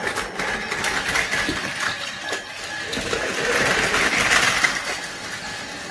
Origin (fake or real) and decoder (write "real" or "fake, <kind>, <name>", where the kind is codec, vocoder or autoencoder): real